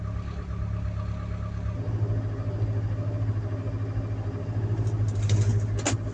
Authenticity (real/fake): real